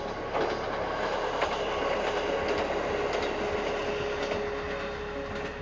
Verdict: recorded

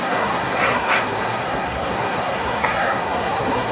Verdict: remade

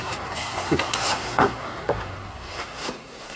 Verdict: remade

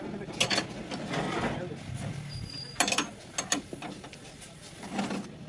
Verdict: recorded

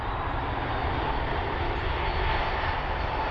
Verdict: recorded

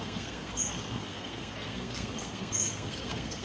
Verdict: remade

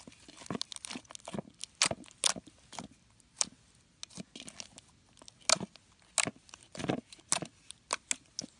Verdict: recorded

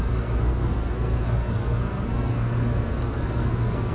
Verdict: remade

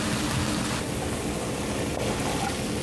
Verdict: recorded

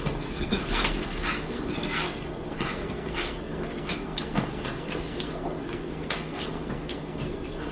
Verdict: remade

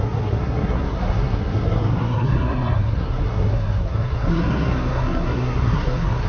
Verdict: remade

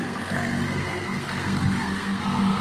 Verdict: remade